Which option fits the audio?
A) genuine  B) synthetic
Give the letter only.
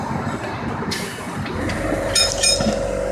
A